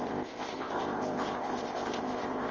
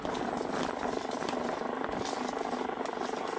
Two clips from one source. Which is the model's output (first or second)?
first